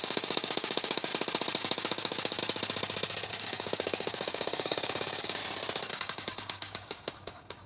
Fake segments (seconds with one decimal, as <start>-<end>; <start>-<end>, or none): 0.0-1.1; 1.6-2.4; 3.3-5.4; 5.9-7.7